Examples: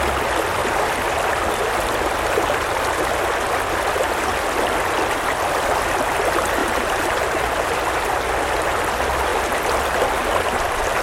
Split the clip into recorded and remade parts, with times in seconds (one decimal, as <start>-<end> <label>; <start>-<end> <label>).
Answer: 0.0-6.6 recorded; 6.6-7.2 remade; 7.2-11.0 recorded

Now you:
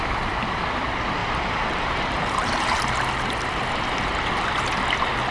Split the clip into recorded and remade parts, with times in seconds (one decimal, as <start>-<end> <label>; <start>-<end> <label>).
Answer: 0.0-1.2 recorded; 1.2-2.8 remade; 2.8-5.3 recorded

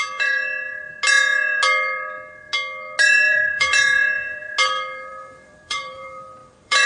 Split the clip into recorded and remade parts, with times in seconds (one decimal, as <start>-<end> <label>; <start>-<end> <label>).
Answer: 0.0-3.3 recorded; 3.3-4.4 remade; 4.4-5.1 recorded; 5.1-6.9 remade

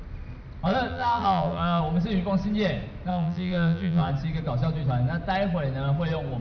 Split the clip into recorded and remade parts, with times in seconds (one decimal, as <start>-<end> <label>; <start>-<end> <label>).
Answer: 0.0-0.9 recorded; 0.9-1.8 remade; 1.8-3.1 recorded; 3.1-4.1 remade; 4.1-6.4 recorded

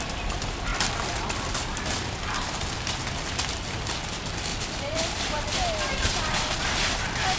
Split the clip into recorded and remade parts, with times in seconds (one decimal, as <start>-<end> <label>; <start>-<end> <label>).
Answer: 0.0-4.5 recorded; 4.5-5.5 remade; 5.5-7.4 recorded